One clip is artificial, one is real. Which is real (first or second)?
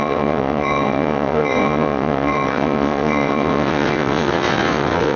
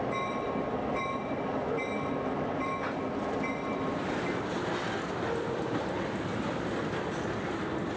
second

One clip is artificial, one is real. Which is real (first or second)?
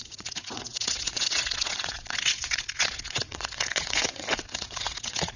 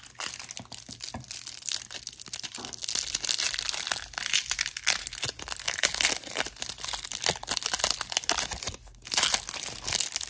second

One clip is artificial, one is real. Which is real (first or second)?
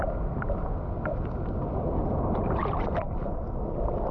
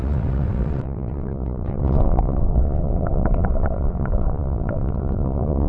first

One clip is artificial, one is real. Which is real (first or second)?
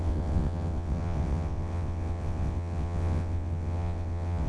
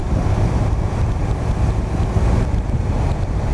second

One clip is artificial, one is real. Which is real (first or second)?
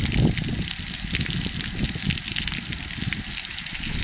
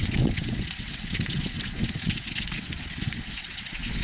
first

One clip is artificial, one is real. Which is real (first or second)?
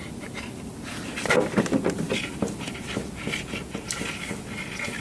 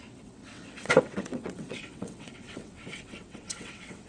first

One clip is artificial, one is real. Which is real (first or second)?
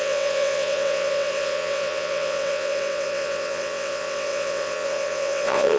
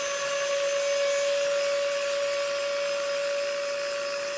second